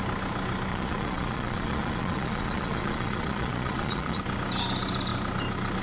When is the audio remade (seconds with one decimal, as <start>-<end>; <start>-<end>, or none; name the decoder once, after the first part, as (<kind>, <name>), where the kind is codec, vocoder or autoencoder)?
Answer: 0.7-4.2 (vocoder, Vocos)